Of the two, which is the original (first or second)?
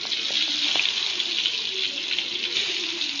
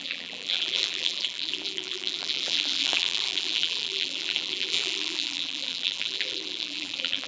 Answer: first